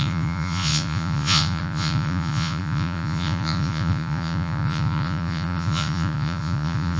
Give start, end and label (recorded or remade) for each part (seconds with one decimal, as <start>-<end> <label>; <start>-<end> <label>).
0.0-7.0 remade